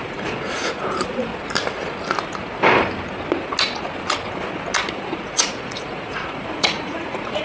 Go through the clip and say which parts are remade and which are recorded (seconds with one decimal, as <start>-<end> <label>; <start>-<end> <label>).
0.0-1.3 remade; 1.3-4.9 recorded; 4.9-7.4 remade